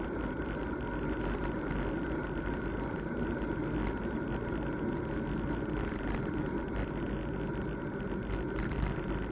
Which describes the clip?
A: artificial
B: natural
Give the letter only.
B